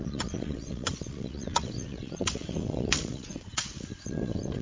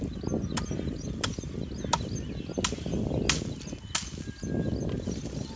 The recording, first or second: second